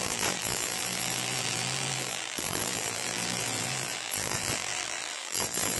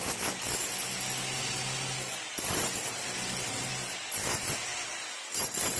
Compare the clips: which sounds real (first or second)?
second